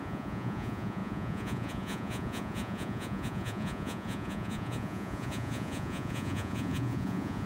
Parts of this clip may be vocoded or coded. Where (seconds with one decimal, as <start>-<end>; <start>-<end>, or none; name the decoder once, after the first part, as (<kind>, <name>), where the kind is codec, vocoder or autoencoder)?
0.0-7.5 (vocoder, Vocos)